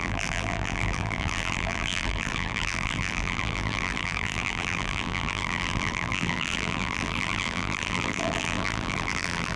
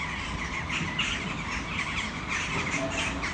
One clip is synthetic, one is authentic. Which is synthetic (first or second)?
first